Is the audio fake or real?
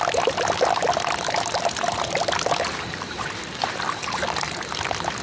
real